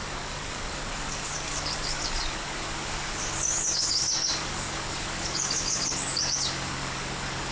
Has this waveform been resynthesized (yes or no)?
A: yes